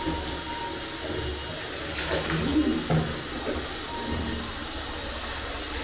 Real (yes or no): yes